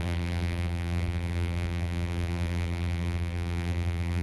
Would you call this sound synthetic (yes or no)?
yes